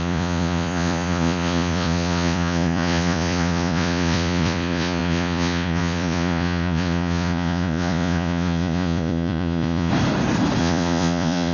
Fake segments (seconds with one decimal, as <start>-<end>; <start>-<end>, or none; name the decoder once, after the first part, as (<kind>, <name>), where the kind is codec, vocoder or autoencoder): 0.0-9.9 (vocoder, Vocos); 10.6-11.5